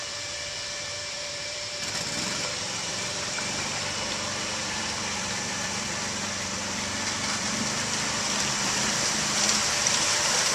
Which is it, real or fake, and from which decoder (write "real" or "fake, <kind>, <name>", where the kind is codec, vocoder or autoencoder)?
fake, vocoder, BigVGAN v2